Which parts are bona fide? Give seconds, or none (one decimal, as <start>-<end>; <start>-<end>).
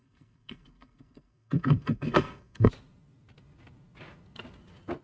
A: 2.7-5.0